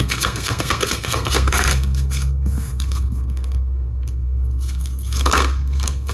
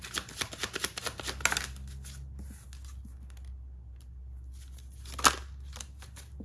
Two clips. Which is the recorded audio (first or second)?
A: second